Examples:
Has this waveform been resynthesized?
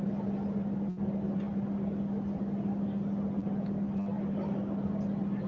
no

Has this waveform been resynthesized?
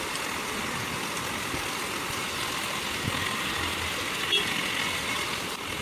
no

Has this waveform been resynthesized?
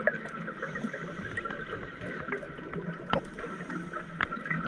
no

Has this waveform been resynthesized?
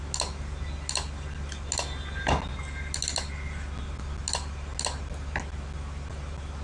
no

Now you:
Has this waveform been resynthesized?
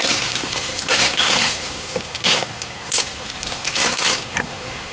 yes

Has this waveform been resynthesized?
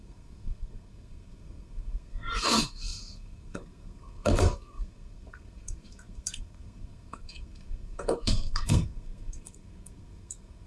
yes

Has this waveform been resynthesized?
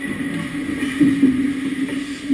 no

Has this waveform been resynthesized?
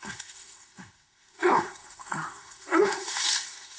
yes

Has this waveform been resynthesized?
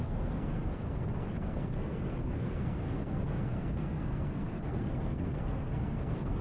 yes